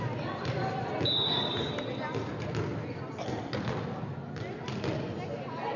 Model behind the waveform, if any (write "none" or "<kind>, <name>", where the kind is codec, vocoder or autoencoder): none